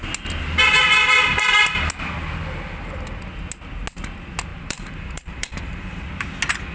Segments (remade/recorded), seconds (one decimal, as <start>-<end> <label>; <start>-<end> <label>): 0.0-4.5 recorded; 4.5-6.1 remade; 6.1-6.7 recorded